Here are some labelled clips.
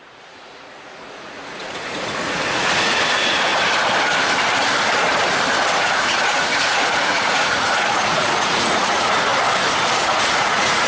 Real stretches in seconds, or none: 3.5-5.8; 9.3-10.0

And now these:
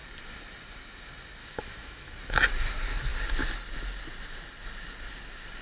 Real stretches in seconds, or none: 0.0-1.4; 2.1-5.6

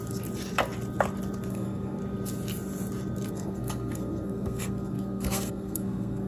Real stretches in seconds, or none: 0.0-1.5; 2.0-3.3

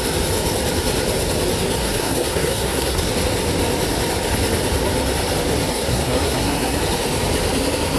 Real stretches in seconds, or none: 0.0-1.8; 3.1-5.7; 6.8-8.0

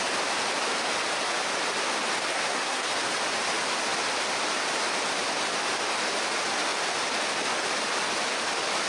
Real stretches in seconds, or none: 0.0-2.3; 2.9-8.9

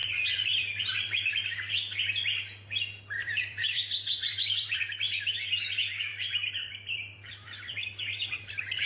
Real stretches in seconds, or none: 1.3-3.2; 4.8-6.1